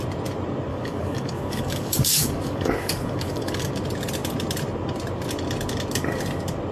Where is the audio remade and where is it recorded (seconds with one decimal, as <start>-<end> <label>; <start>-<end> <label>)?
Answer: 0.0-0.7 recorded; 0.7-3.7 remade; 3.7-6.7 recorded